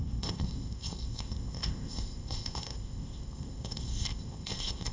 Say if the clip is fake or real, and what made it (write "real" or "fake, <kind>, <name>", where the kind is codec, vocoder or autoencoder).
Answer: fake, codec, ZipCodec